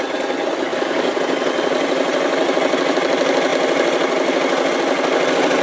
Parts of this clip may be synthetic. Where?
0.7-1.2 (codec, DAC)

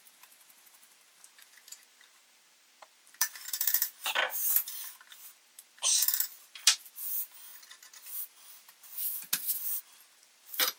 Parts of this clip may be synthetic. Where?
0.0-4.6 (vocoder, BigVGAN v2); 5.2-7.5; 8.5-9.0; 9.8-10.8

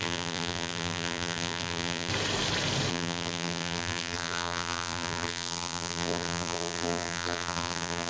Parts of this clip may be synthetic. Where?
0.0-2.1 (vocoder, BigVGAN v2); 2.9-8.1

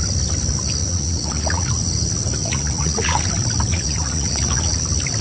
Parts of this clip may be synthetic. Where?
0.8-1.7 (vocoder, Vocos); 2.4-3.2; 3.7-4.6